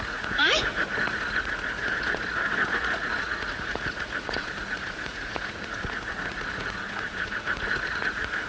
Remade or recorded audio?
remade